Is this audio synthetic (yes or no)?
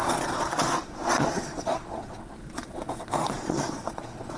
yes